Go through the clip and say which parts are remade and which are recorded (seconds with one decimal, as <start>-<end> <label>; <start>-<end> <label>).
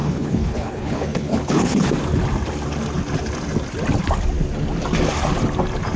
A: 0.0-1.9 remade; 1.9-6.0 recorded